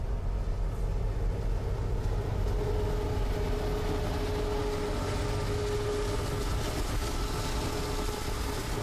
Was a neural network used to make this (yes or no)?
no